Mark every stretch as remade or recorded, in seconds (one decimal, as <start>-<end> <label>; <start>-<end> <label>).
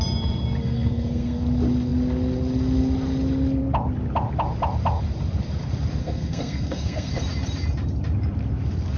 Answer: 0.0-0.6 recorded; 0.6-1.4 remade; 1.4-6.0 recorded; 6.0-7.1 remade; 7.1-9.0 recorded